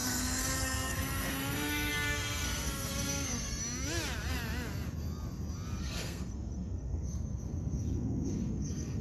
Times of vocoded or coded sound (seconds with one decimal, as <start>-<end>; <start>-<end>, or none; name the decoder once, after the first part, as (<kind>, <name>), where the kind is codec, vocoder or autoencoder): 0.0-3.6 (codec, SNAC); 5.8-9.0